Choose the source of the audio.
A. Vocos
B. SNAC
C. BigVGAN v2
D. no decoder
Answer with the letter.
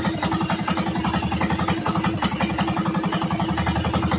D